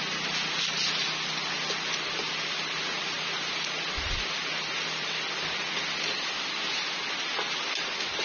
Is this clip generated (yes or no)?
no